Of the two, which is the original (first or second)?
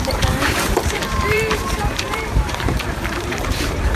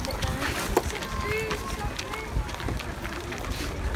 second